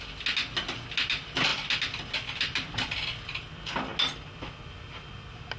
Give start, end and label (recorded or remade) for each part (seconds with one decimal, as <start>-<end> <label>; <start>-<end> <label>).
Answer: 0.0-5.6 recorded